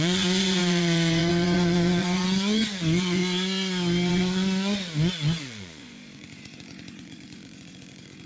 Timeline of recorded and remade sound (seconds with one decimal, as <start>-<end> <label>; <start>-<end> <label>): 0.0-3.2 remade; 3.2-4.1 recorded; 4.1-8.3 remade